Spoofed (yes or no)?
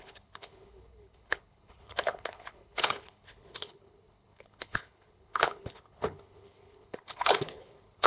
yes